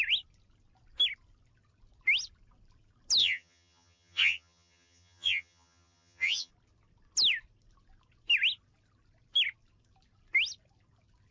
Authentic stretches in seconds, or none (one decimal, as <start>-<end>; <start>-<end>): 0.0-3.2; 6.5-11.3